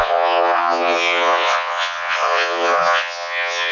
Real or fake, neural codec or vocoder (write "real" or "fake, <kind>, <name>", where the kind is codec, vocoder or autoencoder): fake, vocoder, WaveNeXt